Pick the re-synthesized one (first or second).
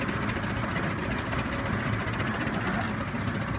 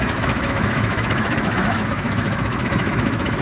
second